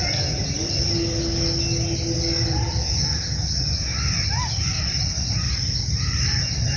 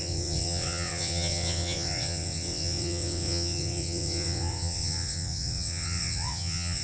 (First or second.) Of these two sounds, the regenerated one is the second